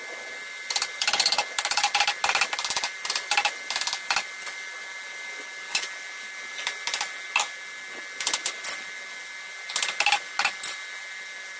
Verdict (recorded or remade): recorded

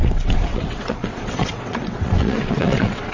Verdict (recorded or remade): remade